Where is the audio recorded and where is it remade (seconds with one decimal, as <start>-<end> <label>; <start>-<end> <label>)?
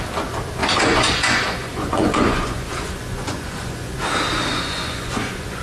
0.0-0.6 recorded; 0.6-4.0 remade; 4.0-4.5 recorded; 4.5-5.6 remade